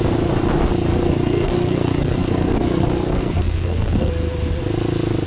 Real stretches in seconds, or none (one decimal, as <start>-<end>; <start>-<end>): 0.0-0.9; 4.1-5.3